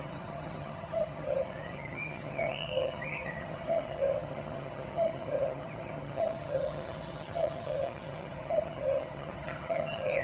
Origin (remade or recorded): remade